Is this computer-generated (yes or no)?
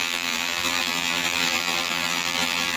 yes